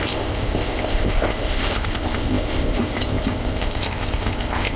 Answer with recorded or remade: remade